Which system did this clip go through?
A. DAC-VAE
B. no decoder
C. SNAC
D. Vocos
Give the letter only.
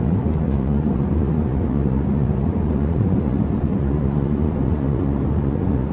D